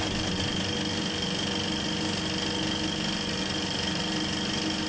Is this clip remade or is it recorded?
recorded